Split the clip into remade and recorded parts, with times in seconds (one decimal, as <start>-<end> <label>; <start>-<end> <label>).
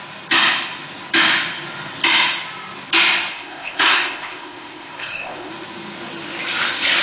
0.0-3.3 recorded; 3.3-5.5 remade; 5.5-7.0 recorded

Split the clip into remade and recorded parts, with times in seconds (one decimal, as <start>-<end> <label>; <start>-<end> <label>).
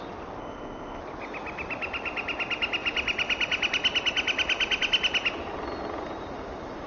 0.0-0.4 recorded; 0.4-1.0 remade; 1.0-6.9 recorded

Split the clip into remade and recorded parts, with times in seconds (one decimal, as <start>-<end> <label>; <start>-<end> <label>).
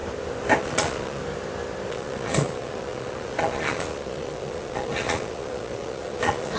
0.0-0.6 recorded; 0.6-1.2 remade; 1.2-1.9 recorded; 1.9-6.6 remade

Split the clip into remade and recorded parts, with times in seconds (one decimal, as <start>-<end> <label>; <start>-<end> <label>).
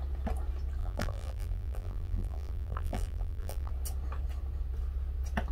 0.0-0.8 recorded; 0.8-3.7 remade; 3.7-5.5 recorded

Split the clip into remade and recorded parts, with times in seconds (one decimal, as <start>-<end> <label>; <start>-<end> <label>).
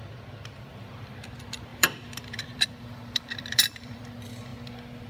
0.0-1.7 recorded; 1.7-4.0 remade; 4.0-5.1 recorded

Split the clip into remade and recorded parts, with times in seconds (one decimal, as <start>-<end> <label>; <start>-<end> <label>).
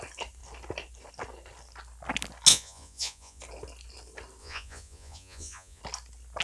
0.0-2.5 recorded; 2.5-3.4 remade; 3.4-4.4 recorded; 4.4-5.8 remade; 5.8-6.4 recorded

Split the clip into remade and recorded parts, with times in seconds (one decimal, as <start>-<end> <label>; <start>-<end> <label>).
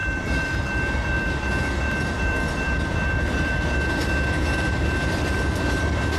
0.0-3.7 remade; 3.7-6.2 recorded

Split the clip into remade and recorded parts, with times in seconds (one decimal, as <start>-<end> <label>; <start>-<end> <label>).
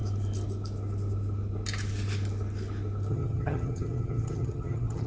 0.0-3.1 recorded; 3.1-5.1 remade